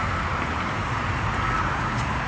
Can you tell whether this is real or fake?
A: real